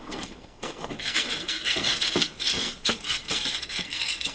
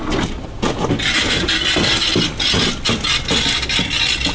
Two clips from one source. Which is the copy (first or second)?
first